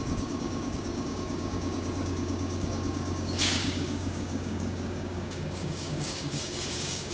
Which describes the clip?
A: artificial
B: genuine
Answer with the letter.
A